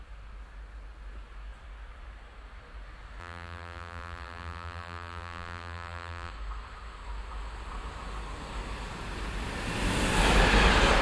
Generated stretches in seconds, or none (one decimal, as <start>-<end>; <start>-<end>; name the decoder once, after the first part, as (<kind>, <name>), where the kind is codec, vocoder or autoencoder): 3.2-6.3 (vocoder, BigVGAN v2)